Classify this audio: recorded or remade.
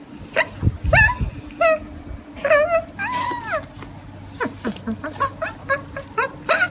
recorded